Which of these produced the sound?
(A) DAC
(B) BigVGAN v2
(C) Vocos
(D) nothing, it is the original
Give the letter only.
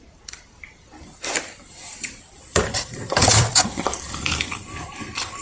B